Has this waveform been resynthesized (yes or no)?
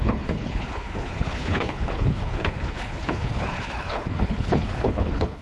yes